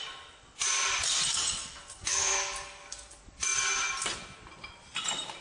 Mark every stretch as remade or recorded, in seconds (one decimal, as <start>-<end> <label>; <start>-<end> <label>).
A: 0.0-1.3 recorded; 1.3-3.1 remade; 3.1-5.4 recorded